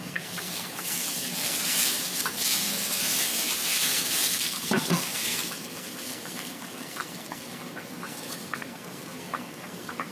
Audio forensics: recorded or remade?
remade